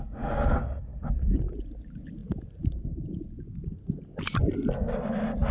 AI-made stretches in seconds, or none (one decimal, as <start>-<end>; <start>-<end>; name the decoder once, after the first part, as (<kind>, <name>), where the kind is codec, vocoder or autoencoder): none

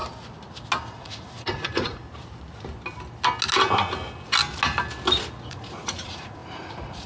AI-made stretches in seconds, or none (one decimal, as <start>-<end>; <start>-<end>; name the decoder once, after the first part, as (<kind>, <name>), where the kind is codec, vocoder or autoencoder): 0.8-2.0 (vocoder, Vocos); 5.5-7.1

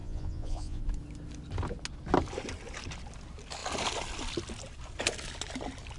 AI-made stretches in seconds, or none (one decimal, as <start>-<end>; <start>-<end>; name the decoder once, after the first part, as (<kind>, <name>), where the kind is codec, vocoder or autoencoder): 0.0-0.8 (vocoder, Vocos)

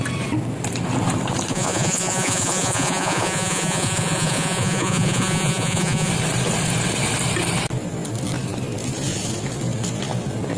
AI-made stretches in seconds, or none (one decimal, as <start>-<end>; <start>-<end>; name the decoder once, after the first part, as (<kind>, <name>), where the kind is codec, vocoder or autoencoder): 1.5-6.1 (vocoder, Vocos)